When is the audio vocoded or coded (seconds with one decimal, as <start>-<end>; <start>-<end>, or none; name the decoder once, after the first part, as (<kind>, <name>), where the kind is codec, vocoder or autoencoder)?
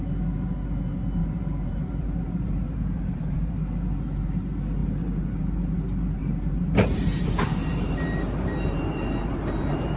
1.2-3.5 (vocoder, BigVGAN v2); 4.8-5.4; 6.2-10.0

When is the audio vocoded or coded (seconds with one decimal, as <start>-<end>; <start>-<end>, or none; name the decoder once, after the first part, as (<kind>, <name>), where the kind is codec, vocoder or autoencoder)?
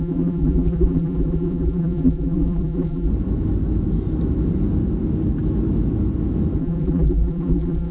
0.0-3.1 (vocoder, BigVGAN v2); 6.6-7.9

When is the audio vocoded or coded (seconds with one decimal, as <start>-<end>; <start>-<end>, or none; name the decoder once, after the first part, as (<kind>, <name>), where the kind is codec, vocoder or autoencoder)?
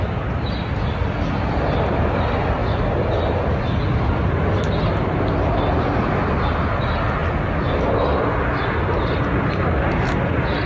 none